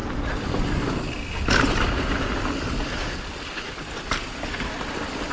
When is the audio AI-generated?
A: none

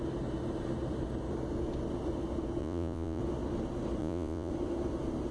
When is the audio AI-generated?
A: 2.6-3.2 (vocoder, Vocos); 4.0-4.5

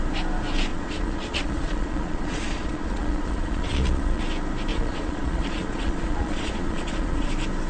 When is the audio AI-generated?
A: 0.7-4.2 (vocoder, Vocos); 4.7-7.3

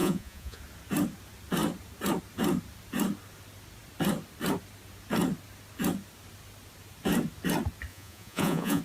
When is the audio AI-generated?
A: 0.0-0.6 (vocoder, Vocos); 7.9-8.8

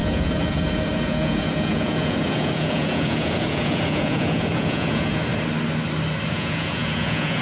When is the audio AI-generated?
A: 0.0-5.3 (vocoder, Vocos); 6.3-7.4

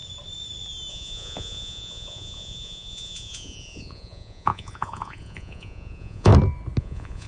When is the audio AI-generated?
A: 0.9-6.3 (vocoder, Vocos); 6.8-7.3